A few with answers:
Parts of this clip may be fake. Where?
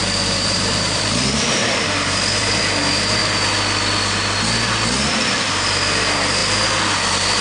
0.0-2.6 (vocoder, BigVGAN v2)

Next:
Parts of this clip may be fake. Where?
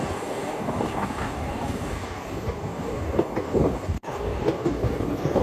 0.0-5.4 (codec, DAC)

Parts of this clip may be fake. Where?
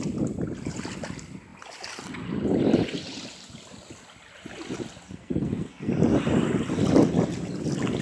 5.1-5.9 (codec, SNAC)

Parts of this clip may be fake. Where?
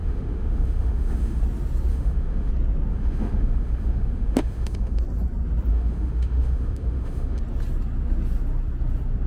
0.0-1.4 (autoencoder, DAC-VAE); 1.9-2.5; 2.9-5.0; 5.7-7.4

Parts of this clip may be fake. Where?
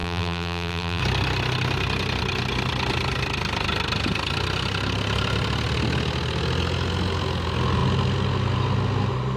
0.0-1.0 (vocoder, BigVGAN v2)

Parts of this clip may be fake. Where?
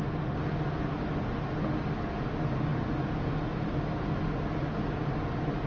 none